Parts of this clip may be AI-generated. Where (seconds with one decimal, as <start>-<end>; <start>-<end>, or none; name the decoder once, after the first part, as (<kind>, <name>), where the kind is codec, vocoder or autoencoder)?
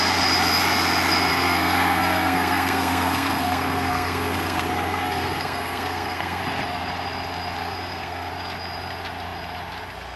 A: 1.3-6.4 (codec, SNAC); 7.6-8.3